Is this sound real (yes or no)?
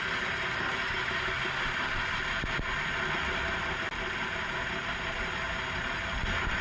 yes